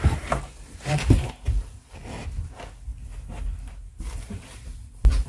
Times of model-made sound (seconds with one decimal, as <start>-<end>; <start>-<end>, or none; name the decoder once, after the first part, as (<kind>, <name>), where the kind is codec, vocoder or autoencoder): none